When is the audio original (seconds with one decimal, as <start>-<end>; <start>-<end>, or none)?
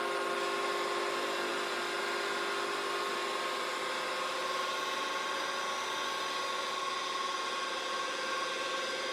0.0-9.1